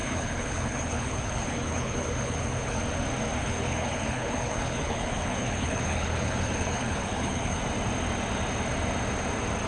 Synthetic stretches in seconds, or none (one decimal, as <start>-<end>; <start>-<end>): 0.0-2.8; 3.4-7.6